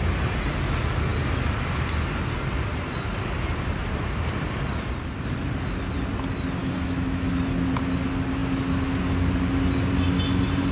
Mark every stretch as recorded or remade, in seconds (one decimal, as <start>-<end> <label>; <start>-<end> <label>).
0.0-6.6 recorded; 6.6-7.3 remade; 7.3-10.7 recorded